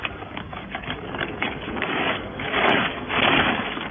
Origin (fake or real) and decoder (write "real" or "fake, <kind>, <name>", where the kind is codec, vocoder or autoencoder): fake, codec, DAC